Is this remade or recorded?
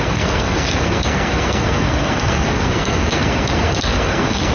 remade